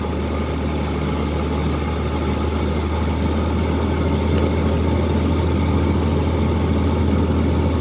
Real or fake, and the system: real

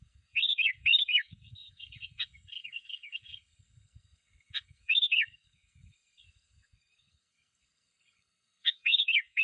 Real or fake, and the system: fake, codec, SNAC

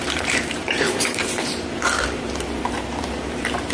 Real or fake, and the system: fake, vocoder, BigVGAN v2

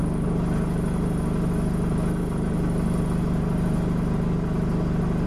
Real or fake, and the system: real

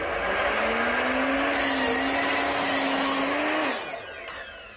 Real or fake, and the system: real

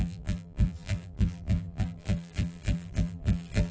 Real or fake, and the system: fake, vocoder, BigVGAN v2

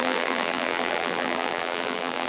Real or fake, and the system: fake, vocoder, BigVGAN v2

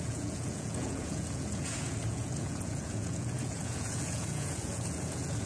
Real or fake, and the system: fake, vocoder, Vocos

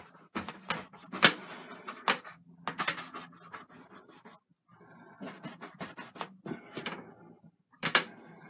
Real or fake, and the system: real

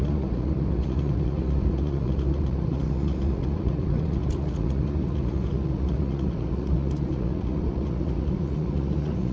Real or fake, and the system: fake, vocoder, Vocos